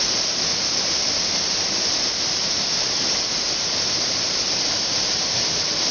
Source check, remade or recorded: remade